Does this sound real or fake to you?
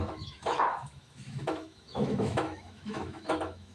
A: fake